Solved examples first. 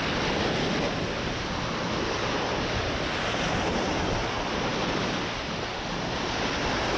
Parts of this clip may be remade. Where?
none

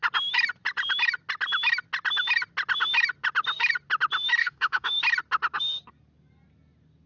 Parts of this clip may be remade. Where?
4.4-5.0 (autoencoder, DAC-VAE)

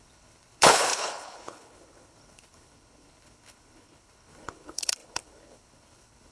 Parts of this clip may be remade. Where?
0.0-6.3 (codec, HILCodec)

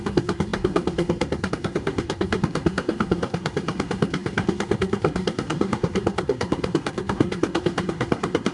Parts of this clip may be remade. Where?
0.0-8.5 (codec, SNAC)